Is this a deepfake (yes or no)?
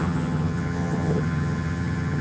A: yes